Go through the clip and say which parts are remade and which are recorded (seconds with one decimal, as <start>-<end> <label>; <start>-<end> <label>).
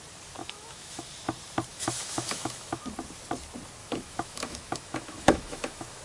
0.0-0.4 recorded; 0.4-1.1 remade; 1.1-1.7 recorded; 1.7-2.8 remade; 2.8-3.8 recorded; 3.8-6.0 remade